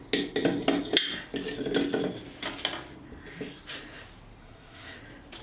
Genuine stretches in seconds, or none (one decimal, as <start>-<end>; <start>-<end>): 0.0-4.4; 5.0-5.4